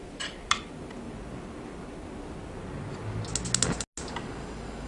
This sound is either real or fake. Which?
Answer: real